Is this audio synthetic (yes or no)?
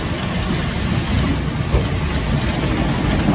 no